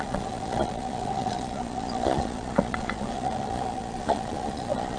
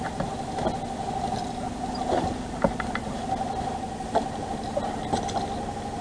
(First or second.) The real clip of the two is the second